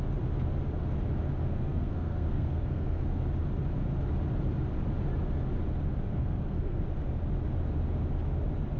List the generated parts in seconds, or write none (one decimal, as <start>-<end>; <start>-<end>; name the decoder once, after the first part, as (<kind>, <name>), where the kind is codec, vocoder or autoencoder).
1.4-3.2 (codec, SNAC); 6.2-6.8